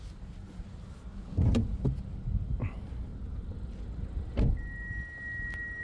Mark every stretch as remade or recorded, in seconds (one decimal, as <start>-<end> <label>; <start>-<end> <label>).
0.0-5.8 recorded

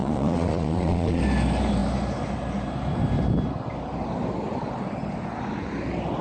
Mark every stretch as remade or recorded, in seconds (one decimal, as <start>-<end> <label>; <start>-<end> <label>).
0.0-1.2 remade; 1.2-6.2 recorded

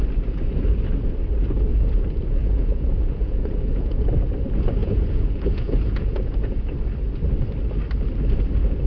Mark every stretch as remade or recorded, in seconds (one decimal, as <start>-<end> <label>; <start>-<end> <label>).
0.0-1.7 recorded; 1.7-4.1 remade; 4.1-4.8 recorded; 4.8-6.7 remade; 6.7-8.9 recorded

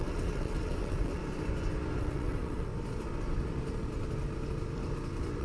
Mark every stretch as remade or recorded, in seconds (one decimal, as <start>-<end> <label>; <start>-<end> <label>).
0.0-1.2 remade; 1.2-2.0 recorded; 2.0-2.7 remade; 2.7-5.4 recorded

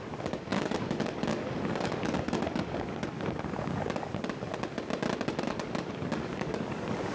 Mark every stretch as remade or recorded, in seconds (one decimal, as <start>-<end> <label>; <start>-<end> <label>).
0.0-4.5 remade; 4.5-5.4 recorded; 5.4-7.1 remade

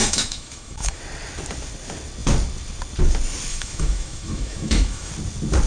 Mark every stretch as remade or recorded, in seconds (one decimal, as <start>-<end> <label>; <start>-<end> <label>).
0.0-1.0 remade; 1.0-3.5 recorded; 3.5-5.1 remade; 5.1-5.7 recorded